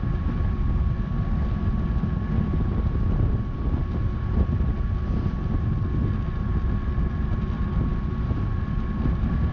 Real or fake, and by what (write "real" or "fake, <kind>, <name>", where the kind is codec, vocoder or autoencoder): real